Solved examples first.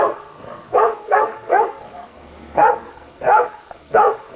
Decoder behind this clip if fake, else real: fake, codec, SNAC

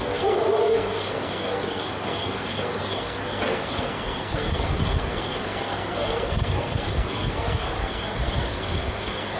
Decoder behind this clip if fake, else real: fake, codec, SNAC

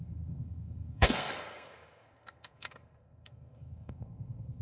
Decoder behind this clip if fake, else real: fake, codec, SNAC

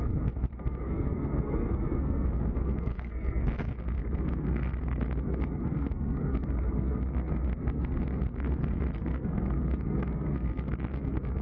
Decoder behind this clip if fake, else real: fake, codec, SNAC